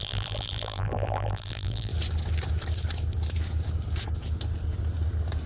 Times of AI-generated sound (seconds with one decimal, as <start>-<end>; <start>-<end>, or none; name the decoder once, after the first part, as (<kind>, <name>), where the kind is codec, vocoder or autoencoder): 0.0-1.9 (vocoder, BigVGAN v2)